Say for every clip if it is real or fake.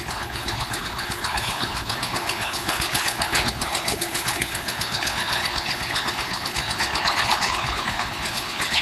fake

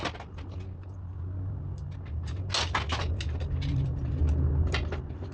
real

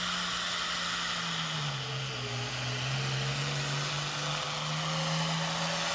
real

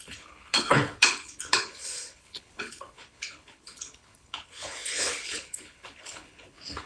fake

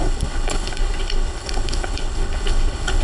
fake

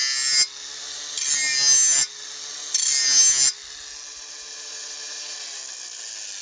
real